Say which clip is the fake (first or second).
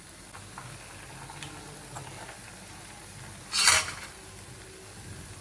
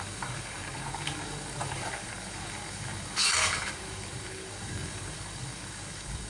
second